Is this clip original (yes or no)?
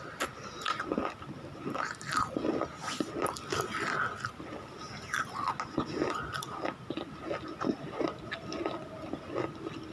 yes